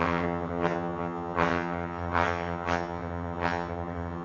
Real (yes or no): no